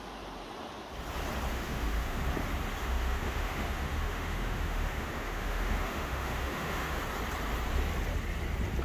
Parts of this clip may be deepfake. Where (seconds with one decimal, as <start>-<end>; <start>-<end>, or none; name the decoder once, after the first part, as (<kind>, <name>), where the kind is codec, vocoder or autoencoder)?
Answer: 1.5-2.2 (autoencoder, DAC-VAE); 2.8-7.0